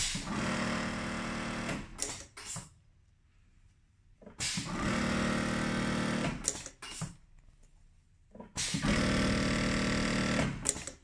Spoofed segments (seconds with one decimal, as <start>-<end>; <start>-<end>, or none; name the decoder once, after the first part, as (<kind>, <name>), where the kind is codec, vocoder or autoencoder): none